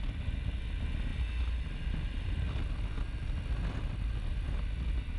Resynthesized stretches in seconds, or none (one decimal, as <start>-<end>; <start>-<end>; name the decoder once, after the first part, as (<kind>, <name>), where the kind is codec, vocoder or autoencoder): none

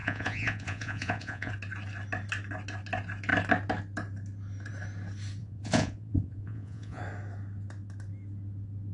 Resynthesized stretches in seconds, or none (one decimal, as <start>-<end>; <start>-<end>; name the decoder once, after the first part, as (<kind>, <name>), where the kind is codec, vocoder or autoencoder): 0.0-1.5 (vocoder, Vocos); 5.4-7.0

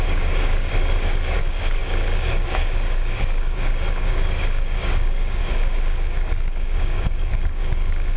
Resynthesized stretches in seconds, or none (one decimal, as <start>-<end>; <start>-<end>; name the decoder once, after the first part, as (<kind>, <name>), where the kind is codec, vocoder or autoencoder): 0.0-8.2 (codec, DAC)

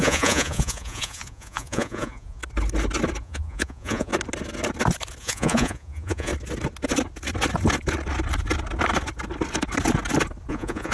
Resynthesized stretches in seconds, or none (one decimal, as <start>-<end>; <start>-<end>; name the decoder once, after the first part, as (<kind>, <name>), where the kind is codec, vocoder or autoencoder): 0.0-2.4 (vocoder, Vocos); 3.2-4.1; 5.2-6.3; 10.5-10.9

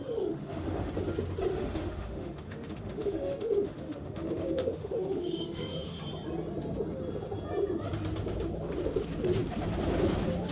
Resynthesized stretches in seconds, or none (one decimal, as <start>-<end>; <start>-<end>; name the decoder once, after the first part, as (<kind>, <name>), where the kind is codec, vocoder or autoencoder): 0.0-0.9 (autoencoder, DAC-VAE); 1.5-6.0